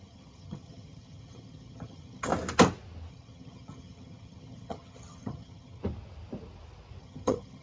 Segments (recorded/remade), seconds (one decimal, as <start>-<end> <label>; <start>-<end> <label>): 0.0-2.3 remade; 2.3-3.1 recorded; 3.1-5.8 remade; 5.8-7.0 recorded; 7.0-7.6 remade